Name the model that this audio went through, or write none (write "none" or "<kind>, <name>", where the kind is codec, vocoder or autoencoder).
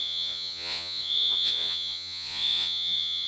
vocoder, Vocos